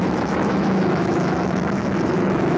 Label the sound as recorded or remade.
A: remade